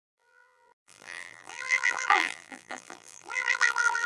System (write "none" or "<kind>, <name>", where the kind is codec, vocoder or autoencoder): vocoder, BigVGAN v2